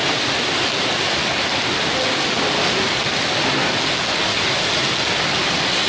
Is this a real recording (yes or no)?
yes